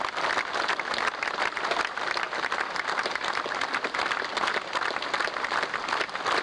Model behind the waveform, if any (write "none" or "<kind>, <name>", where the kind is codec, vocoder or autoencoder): none